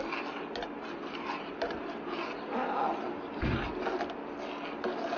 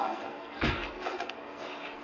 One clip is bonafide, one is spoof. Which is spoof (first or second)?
second